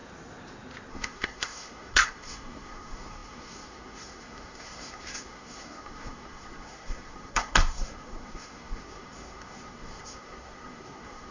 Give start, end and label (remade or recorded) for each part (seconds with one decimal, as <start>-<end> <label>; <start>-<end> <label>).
0.0-0.9 recorded; 0.9-11.3 remade